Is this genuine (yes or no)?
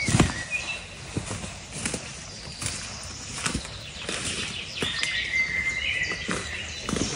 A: yes